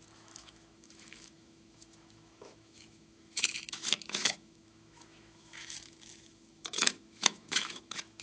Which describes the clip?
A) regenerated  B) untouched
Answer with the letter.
A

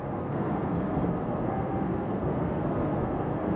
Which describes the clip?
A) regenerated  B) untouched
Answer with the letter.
A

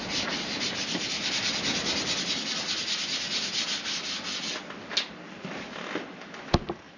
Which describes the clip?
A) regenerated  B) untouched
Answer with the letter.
B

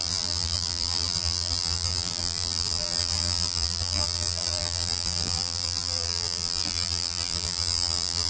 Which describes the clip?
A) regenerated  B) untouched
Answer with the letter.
A